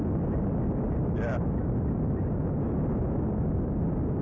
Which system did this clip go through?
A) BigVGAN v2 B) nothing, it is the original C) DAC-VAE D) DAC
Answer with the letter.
B